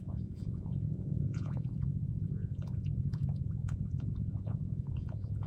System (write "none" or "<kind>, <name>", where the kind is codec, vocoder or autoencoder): vocoder, Vocos